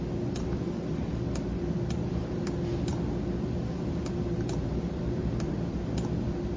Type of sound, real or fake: real